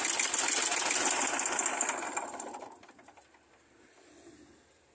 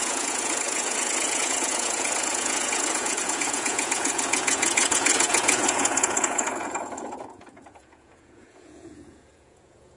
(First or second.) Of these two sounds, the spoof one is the second